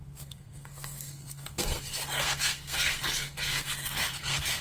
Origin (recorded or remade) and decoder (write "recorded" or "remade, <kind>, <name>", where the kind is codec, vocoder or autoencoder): remade, codec, SNAC